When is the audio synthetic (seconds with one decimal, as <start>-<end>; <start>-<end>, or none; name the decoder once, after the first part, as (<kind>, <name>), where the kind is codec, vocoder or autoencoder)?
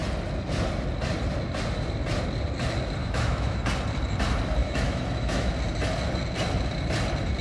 3.0-3.6 (autoencoder, DAC-VAE); 4.6-5.5